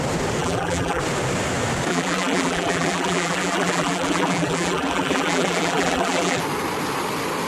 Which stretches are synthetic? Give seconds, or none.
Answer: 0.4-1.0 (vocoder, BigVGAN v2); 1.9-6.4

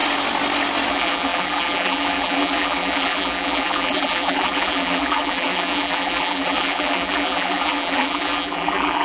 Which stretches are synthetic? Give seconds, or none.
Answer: 0.9-9.0 (vocoder, BigVGAN v2)

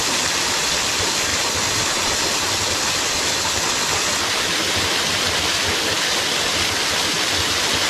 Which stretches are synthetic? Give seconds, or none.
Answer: none

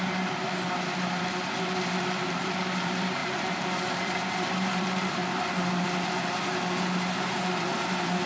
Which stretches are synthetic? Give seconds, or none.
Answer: 0.0-8.3 (vocoder, BigVGAN v2)

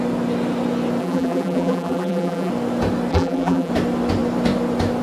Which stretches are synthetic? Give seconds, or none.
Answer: 1.0-2.5 (vocoder, BigVGAN v2); 3.1-3.7